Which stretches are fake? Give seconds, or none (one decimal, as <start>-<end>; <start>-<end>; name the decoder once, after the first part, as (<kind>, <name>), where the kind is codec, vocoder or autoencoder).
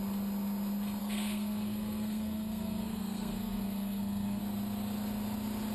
1.0-4.4 (codec, SNAC)